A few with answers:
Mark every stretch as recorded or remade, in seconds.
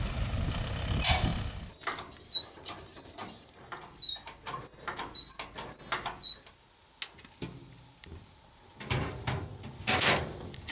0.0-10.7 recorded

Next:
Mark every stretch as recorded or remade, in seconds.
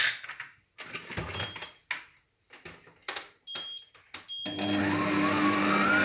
0.0-6.0 recorded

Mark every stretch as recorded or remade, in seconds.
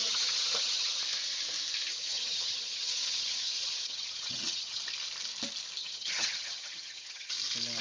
0.0-1.0 remade; 1.0-1.9 recorded; 1.9-4.8 remade; 4.8-5.8 recorded; 5.8-7.3 remade; 7.3-7.8 recorded